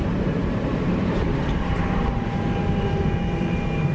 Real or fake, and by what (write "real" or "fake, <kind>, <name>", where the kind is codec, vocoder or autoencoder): fake, vocoder, BigVGAN v2